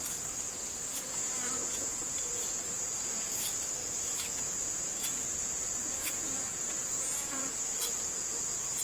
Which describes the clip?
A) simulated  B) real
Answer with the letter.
A